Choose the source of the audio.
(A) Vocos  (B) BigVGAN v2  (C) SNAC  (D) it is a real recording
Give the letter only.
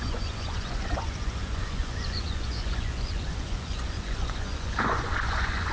A